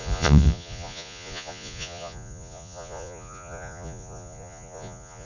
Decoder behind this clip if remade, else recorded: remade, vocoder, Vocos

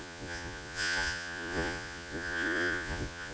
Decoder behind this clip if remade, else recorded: remade, vocoder, Vocos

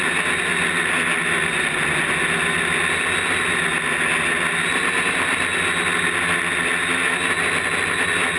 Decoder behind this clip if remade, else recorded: recorded